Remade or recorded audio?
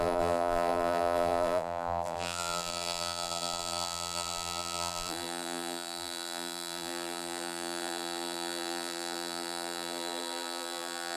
remade